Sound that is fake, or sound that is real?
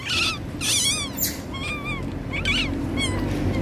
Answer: real